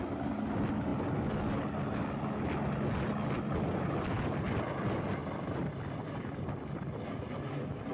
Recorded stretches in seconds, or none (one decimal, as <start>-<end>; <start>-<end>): 0.0-7.9